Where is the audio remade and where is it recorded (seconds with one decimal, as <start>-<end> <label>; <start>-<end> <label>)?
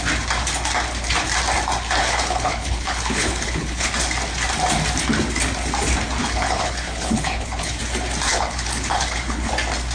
0.0-2.0 recorded; 2.0-3.9 remade; 3.9-6.2 recorded; 6.2-7.8 remade; 7.8-8.3 recorded; 8.3-9.5 remade; 9.5-9.9 recorded